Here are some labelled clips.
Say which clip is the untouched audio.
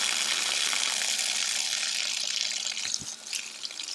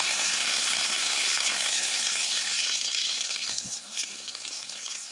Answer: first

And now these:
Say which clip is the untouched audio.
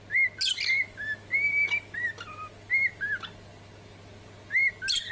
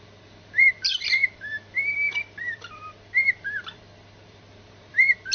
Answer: first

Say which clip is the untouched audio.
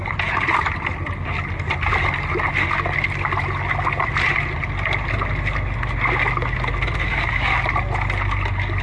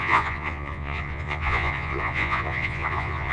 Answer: first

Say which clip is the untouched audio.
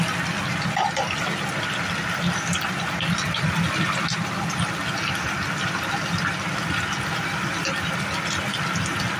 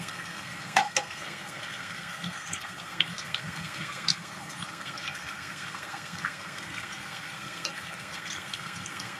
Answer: first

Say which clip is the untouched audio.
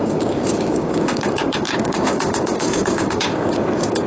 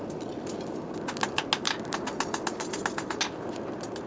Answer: second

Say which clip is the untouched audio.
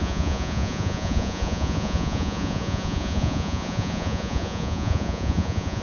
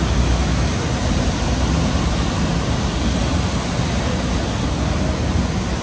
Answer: second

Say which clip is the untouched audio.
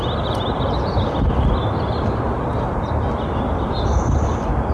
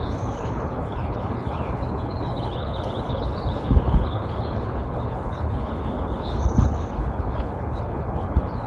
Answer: first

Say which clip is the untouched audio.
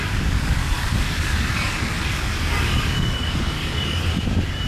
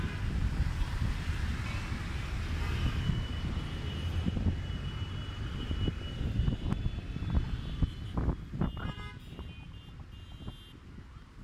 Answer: second